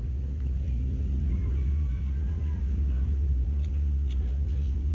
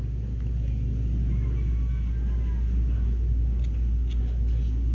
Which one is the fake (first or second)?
first